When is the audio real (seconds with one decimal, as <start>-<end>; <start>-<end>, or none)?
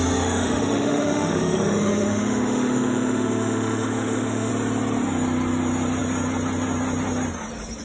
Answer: 4.5-7.8